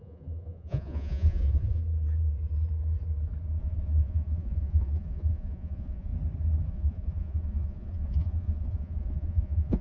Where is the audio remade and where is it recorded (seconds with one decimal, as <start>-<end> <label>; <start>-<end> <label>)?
0.0-1.8 remade; 1.8-3.6 recorded; 3.6-6.1 remade; 6.1-6.7 recorded; 6.7-9.8 remade